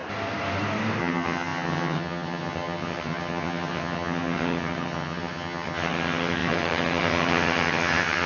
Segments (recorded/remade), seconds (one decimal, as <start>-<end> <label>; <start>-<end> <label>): 0.0-1.0 recorded; 1.0-8.3 remade